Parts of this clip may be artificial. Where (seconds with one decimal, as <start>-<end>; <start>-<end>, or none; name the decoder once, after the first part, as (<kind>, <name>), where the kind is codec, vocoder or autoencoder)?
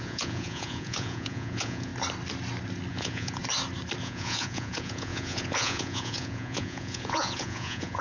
0.0-1.9 (vocoder, Vocos); 2.9-3.4; 4.0-8.0